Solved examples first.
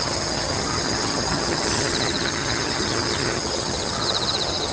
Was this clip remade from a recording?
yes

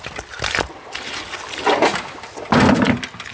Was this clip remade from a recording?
no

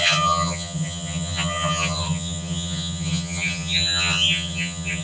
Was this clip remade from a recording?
yes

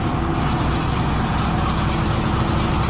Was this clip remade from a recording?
no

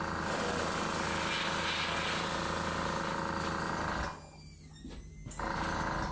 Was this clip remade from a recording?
no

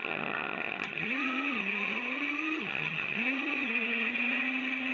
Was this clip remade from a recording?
yes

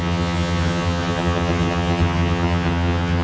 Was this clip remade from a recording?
yes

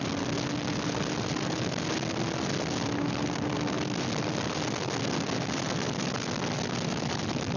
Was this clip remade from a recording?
no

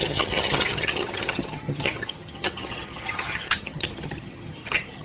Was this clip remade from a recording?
yes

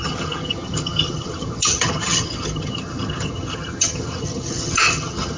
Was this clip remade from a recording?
yes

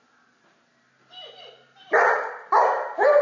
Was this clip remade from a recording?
no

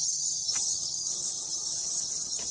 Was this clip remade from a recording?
yes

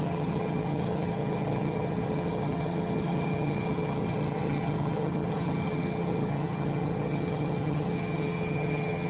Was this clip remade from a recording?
yes